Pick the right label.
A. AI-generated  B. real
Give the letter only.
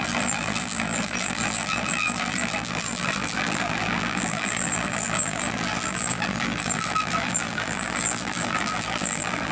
A